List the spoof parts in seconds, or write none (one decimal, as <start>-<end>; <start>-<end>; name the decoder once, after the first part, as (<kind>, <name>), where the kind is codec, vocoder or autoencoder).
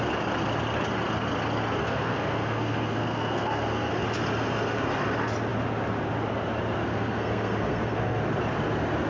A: 1.8-3.9 (codec, SNAC); 6.8-8.2